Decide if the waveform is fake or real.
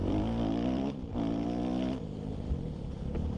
fake